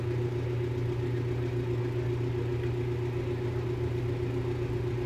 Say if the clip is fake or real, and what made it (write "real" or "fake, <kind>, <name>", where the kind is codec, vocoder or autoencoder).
real